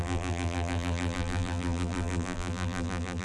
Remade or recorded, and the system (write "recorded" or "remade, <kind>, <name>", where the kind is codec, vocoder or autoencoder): remade, vocoder, BigVGAN v2